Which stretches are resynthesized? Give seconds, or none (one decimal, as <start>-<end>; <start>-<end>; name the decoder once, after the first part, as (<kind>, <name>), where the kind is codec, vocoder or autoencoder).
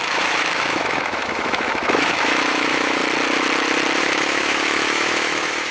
0.0-3.0 (autoencoder, DAC-VAE); 4.0-5.7